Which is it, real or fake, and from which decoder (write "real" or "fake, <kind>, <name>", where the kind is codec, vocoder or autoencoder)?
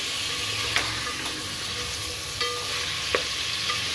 real